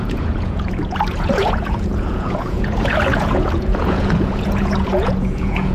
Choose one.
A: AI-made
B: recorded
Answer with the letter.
A